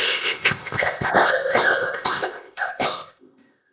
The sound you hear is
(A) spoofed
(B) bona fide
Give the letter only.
A